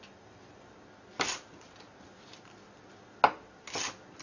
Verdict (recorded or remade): recorded